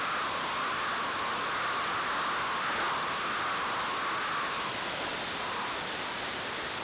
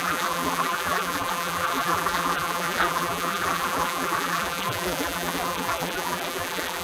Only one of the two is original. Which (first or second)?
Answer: first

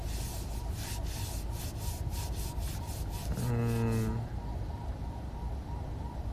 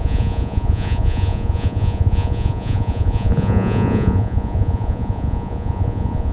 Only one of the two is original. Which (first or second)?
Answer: first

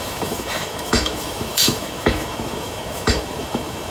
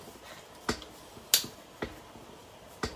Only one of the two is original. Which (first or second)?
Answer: second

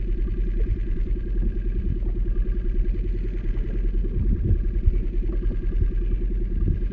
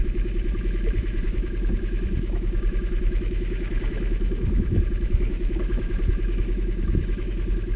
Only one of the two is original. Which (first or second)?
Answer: first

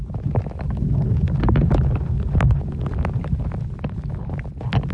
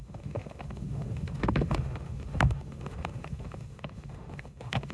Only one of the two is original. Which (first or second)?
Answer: first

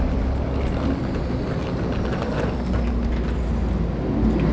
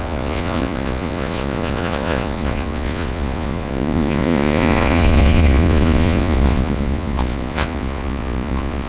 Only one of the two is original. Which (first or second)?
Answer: first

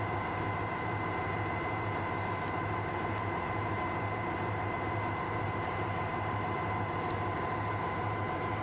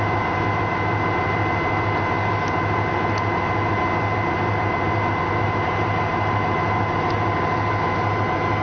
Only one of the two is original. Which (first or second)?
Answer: second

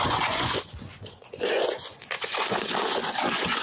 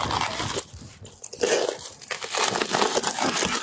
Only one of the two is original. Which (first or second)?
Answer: second